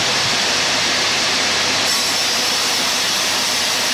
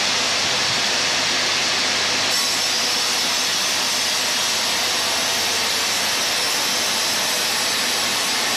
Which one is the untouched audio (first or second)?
second